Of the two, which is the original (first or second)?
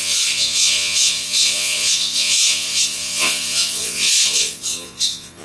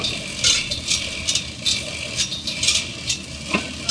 second